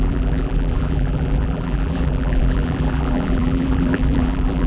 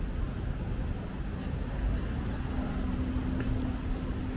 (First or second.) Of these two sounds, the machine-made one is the first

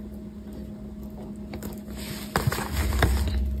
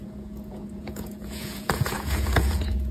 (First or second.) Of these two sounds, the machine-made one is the second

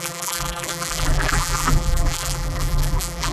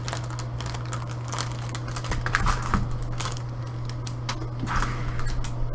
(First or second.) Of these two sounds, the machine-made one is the first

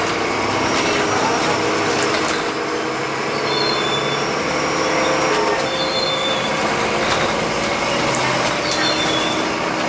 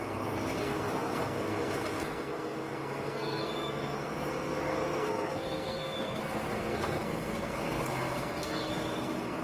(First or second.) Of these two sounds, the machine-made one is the second